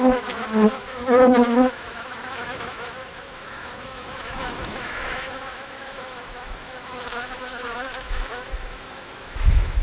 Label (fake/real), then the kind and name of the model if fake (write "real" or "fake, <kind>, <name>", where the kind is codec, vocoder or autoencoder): fake, autoencoder, DAC-VAE